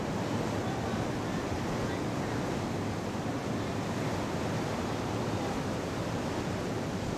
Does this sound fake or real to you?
real